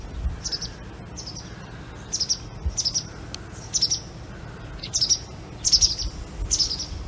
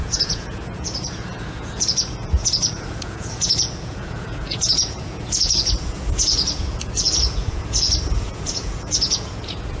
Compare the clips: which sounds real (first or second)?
first